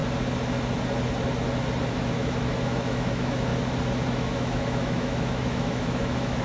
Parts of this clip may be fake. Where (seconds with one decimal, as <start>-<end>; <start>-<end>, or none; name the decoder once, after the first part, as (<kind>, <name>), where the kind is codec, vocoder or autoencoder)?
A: 1.9-3.5 (autoencoder, DAC-VAE); 4.1-6.4

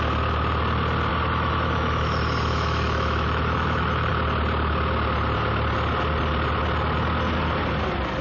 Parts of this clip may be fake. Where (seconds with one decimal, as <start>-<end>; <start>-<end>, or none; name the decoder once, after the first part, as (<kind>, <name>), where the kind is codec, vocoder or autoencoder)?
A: 1.1-4.1 (autoencoder, DAC-VAE)

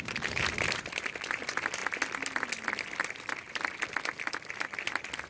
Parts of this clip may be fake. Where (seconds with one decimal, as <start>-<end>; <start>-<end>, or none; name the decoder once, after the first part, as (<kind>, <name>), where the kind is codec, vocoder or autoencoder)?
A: none

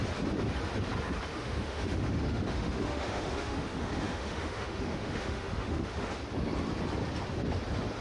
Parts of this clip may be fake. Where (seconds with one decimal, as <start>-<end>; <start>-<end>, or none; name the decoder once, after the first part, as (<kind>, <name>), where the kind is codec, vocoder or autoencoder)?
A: 1.3-6.1 (autoencoder, DAC-VAE)

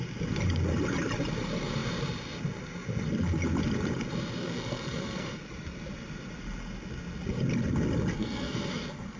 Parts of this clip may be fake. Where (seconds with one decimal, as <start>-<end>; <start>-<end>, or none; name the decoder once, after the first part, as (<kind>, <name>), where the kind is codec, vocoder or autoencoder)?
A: 4.4-5.4 (codec, SNAC); 8.1-8.7

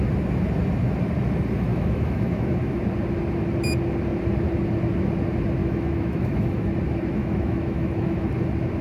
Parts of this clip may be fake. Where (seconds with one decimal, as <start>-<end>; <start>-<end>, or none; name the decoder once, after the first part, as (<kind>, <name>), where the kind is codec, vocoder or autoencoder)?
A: 1.7-2.8 (autoencoder, DAC-VAE); 5.6-6.7; 7.2-8.3

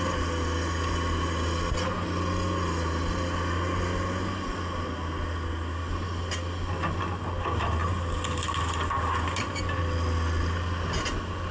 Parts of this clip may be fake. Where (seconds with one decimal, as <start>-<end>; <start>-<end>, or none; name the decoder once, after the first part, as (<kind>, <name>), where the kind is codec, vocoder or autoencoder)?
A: none

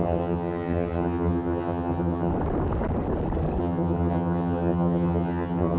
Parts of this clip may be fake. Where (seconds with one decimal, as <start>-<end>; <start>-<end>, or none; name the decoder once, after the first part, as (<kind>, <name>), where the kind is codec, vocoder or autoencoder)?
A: 0.0-2.3 (vocoder, HiFi-GAN); 3.6-5.8